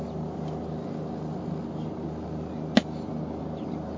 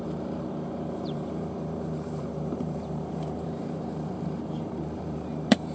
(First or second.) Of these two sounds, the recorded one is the first